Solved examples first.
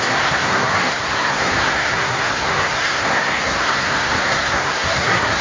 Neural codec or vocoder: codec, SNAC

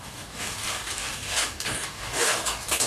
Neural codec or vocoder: codec, DAC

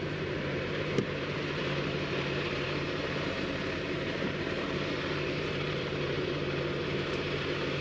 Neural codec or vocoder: vocoder, BigVGAN v2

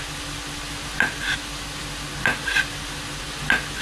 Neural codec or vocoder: none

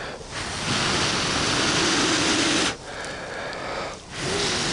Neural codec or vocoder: none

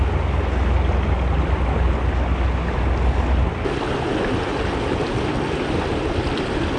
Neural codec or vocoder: none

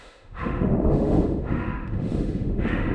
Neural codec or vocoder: autoencoder, DAC-VAE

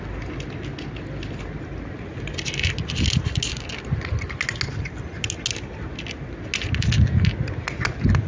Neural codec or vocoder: none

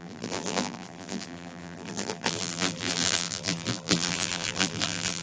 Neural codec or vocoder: vocoder, BigVGAN v2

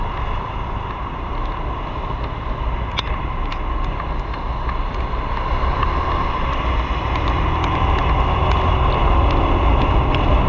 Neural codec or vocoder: none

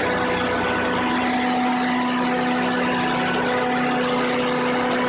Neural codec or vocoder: none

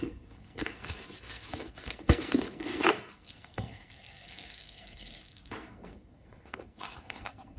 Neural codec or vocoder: codec, SNAC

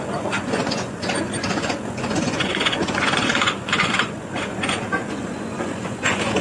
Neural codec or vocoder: vocoder, Vocos